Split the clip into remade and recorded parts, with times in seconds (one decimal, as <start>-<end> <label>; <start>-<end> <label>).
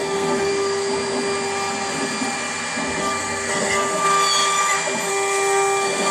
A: 0.0-0.5 remade; 0.5-3.0 recorded; 3.0-4.0 remade; 4.0-5.1 recorded; 5.1-6.1 remade